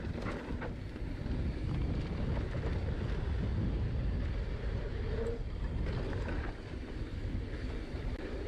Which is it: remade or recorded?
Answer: recorded